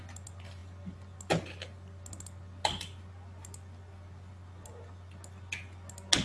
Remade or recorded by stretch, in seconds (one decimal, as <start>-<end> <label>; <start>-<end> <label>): 0.0-6.2 recorded